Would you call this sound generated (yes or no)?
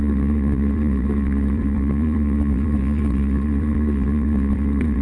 yes